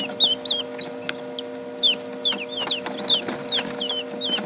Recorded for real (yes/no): yes